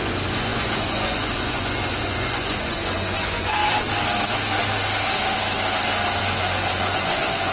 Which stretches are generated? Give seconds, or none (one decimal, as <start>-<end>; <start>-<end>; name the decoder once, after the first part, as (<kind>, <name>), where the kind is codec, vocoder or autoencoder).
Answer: 0.0-3.6 (vocoder, Vocos); 6.2-7.5